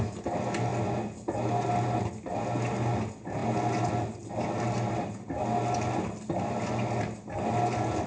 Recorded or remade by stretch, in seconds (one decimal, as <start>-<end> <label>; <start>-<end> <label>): 0.0-8.1 recorded